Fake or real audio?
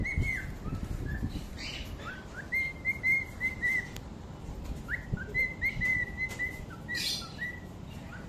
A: real